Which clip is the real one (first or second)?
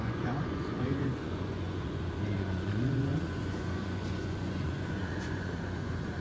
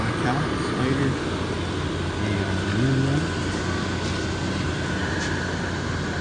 second